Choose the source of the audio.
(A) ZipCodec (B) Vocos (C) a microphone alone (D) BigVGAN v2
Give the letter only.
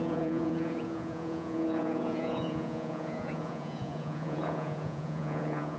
B